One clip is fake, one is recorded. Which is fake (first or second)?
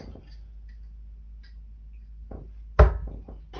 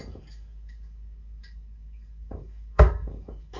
second